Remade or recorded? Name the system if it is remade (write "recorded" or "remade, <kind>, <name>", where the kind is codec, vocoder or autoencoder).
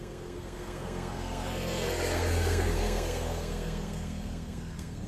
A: remade, codec, SNAC